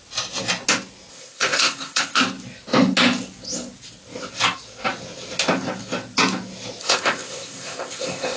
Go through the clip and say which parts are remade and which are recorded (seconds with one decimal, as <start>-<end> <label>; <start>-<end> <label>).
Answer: 0.0-1.1 recorded; 1.1-2.2 remade; 2.2-6.8 recorded; 6.8-8.4 remade